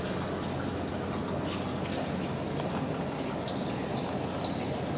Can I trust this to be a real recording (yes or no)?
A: yes